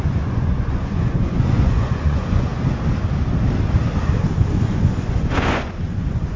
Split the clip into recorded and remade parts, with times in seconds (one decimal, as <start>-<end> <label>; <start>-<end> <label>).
0.0-2.5 remade; 2.5-4.6 recorded; 4.6-6.4 remade